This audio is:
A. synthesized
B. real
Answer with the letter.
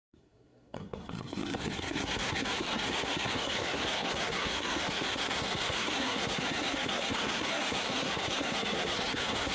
A